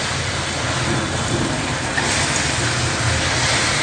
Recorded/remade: recorded